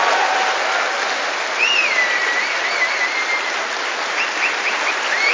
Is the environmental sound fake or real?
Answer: real